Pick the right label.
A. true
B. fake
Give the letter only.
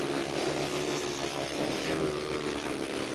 A